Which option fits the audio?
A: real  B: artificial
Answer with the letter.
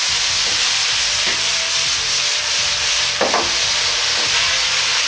A